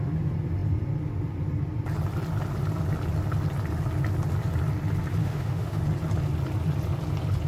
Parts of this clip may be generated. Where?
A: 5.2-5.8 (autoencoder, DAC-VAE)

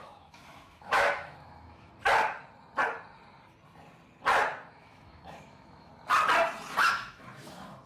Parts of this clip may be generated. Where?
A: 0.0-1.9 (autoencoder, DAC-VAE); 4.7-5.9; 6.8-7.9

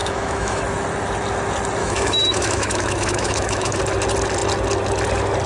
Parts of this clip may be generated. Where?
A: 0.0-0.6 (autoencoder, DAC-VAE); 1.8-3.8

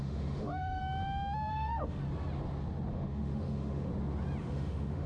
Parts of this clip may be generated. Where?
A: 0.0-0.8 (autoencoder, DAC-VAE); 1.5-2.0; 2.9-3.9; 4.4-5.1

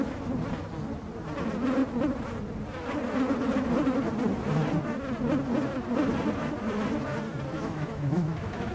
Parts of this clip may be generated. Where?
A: 7.5-8.7 (autoencoder, DAC-VAE)